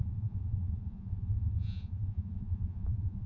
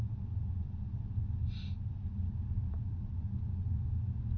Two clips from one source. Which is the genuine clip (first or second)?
second